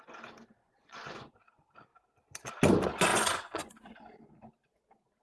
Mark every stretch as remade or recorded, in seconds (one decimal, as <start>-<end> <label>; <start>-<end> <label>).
0.0-0.6 recorded; 0.6-1.3 remade; 1.3-3.1 recorded; 3.1-3.7 remade; 3.7-5.2 recorded